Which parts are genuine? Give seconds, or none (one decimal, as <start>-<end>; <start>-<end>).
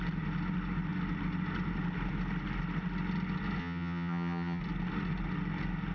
0.0-3.6; 4.6-5.9